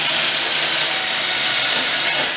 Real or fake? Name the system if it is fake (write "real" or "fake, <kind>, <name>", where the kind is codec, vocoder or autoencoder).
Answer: real